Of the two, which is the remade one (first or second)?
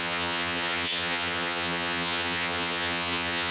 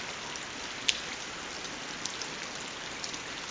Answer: first